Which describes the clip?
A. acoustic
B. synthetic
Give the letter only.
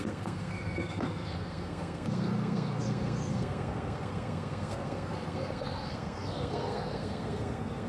B